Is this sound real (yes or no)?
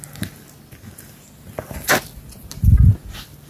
yes